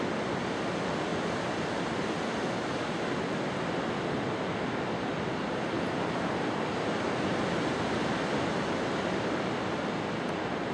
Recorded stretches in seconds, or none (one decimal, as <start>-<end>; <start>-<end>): 0.0-10.7